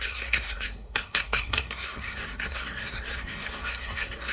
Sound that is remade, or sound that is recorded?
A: remade